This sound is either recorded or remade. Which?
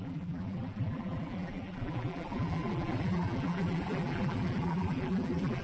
remade